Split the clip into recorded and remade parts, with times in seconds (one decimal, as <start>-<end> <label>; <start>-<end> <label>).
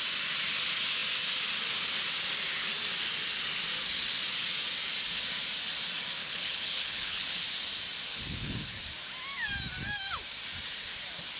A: 0.0-6.2 recorded; 6.2-7.4 remade; 7.4-8.1 recorded; 8.1-8.8 remade; 8.8-11.4 recorded